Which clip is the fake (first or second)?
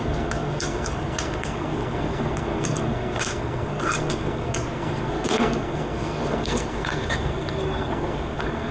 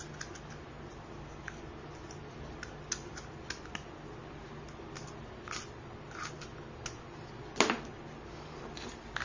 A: first